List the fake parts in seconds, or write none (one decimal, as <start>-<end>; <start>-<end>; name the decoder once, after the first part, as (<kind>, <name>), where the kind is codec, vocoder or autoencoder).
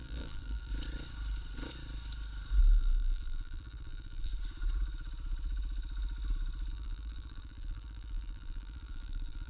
0.0-0.7 (vocoder, BigVGAN v2); 2.6-4.3; 6.7-9.5